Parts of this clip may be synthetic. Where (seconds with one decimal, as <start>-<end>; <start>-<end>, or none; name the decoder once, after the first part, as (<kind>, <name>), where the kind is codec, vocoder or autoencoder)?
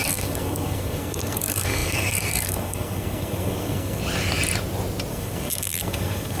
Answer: 0.0-4.0 (codec, SNAC); 5.1-6.4